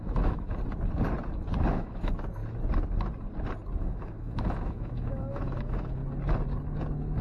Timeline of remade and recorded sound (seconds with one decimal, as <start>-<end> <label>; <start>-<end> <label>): 0.0-0.5 remade; 0.5-1.7 recorded; 1.7-2.4 remade; 2.4-3.8 recorded; 3.8-6.0 remade; 6.0-7.2 recorded